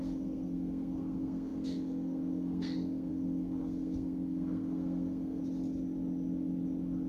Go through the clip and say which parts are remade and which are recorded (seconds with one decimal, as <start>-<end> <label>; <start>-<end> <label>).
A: 0.0-5.4 remade; 5.4-7.1 recorded